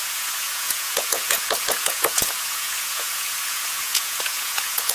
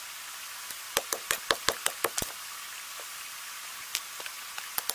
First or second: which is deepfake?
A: first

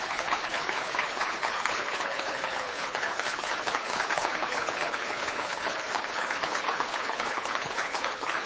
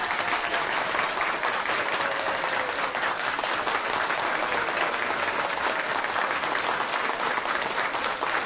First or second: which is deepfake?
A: first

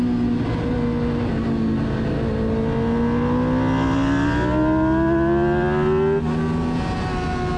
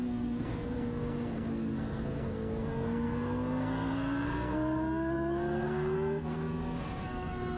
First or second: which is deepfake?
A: second